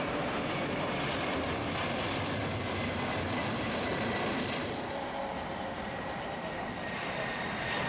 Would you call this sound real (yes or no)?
no